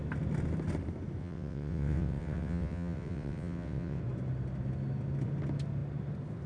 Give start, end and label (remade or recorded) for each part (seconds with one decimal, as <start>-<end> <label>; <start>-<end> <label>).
0.0-1.2 recorded; 1.2-4.0 remade; 4.0-6.5 recorded